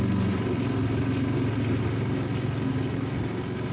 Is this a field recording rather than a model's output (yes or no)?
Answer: yes